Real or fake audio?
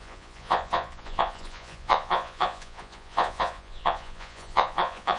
fake